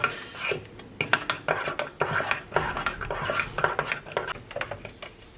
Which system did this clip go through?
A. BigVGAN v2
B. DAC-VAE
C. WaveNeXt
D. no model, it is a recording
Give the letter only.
D